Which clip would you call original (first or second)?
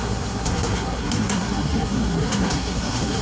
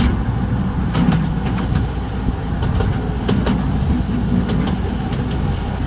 second